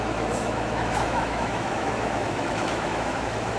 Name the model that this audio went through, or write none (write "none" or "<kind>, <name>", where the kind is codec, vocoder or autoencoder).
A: autoencoder, DAC-VAE